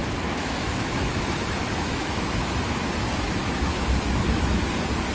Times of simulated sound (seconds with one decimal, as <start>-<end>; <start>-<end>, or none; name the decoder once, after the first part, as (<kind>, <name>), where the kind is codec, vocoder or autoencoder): 0.0-2.9 (autoencoder, DAC-VAE); 3.4-4.6